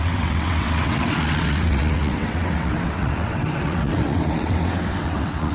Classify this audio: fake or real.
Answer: fake